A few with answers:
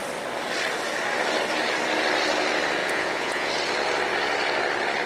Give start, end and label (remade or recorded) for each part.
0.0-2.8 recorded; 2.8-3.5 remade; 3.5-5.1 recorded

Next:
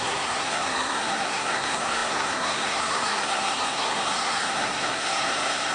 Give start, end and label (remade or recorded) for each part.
0.0-5.7 remade

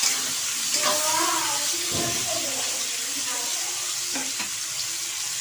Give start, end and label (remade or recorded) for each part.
0.0-5.4 recorded